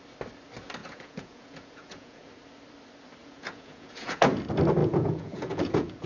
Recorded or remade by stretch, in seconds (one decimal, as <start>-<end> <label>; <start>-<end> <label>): 0.0-0.8 recorded; 0.8-2.3 remade; 2.3-3.2 recorded; 3.2-4.3 remade; 4.3-4.8 recorded; 4.8-6.1 remade